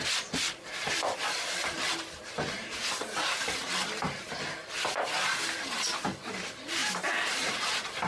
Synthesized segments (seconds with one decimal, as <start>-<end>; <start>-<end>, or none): 0.0-8.1